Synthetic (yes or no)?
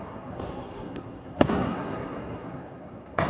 yes